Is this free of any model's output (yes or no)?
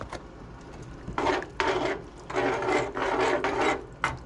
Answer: yes